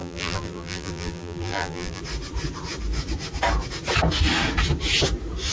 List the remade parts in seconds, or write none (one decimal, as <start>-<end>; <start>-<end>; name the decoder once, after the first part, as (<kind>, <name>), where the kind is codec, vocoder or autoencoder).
0.0-2.0 (vocoder, BigVGAN v2)